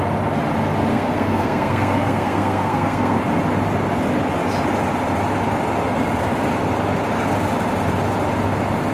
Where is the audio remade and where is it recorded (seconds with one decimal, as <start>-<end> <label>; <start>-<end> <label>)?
0.0-0.9 recorded; 0.9-3.2 remade; 3.2-8.9 recorded